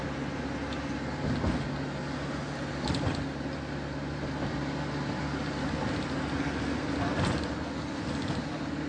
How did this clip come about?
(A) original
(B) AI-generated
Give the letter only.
A